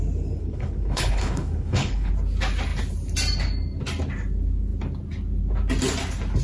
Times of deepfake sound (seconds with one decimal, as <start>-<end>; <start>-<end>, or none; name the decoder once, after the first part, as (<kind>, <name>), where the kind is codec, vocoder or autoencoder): 0.4-2.1 (codec, HILCodec)